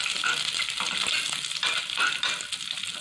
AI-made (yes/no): no